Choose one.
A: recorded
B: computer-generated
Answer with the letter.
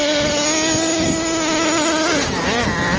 A